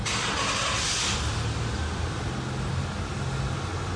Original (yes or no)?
yes